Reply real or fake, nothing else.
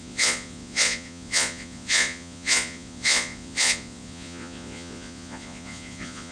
fake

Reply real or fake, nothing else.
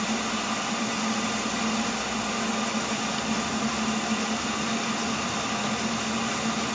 real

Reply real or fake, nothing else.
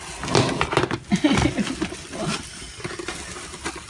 real